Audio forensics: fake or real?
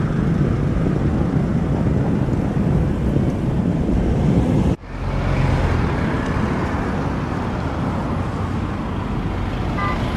real